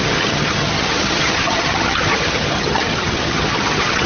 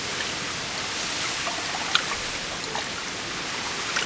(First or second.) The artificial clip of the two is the first